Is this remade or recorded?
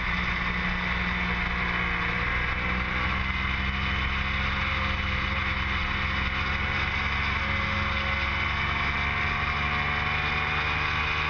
recorded